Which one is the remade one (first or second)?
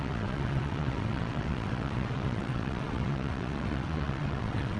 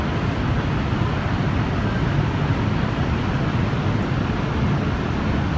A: first